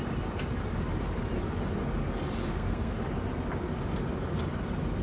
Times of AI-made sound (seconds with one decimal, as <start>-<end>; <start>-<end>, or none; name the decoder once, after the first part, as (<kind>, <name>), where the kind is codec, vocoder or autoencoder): 2.5-3.0 (codec, SNAC)